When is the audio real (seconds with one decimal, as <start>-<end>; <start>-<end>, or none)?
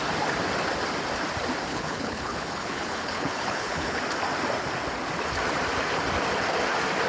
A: 0.0-1.7; 4.0-7.1